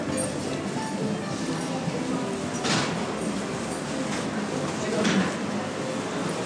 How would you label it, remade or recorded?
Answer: recorded